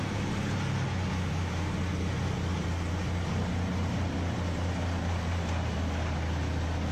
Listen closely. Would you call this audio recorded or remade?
recorded